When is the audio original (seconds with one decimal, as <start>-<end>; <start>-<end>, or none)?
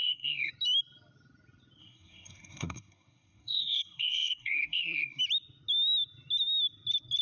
0.5-1.8; 5.2-7.2